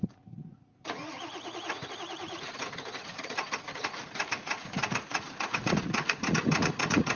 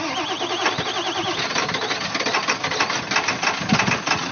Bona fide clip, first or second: second